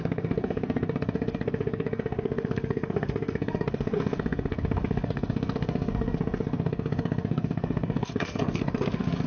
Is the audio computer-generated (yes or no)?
yes